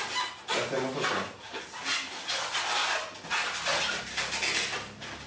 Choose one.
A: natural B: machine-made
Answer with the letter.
A